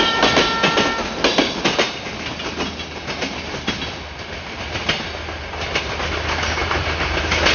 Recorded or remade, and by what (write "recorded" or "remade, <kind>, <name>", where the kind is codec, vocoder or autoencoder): recorded